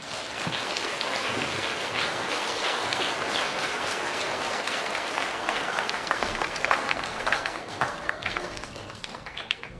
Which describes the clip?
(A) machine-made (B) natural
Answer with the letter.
A